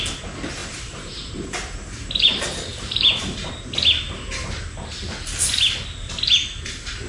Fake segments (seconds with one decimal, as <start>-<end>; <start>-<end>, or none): 0.6-3.5